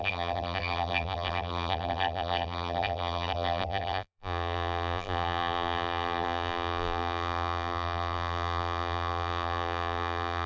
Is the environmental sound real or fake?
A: fake